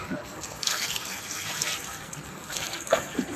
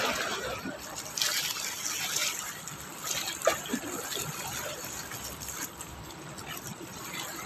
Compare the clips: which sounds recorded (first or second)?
second